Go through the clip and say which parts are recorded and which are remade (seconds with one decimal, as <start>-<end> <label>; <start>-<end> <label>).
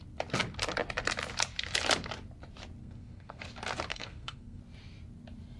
0.0-2.8 recorded; 2.8-3.4 remade; 3.4-3.9 recorded; 3.9-4.6 remade; 4.6-5.6 recorded